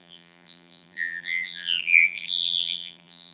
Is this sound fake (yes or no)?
yes